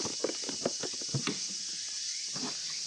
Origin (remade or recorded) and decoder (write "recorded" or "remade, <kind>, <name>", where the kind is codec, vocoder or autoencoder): recorded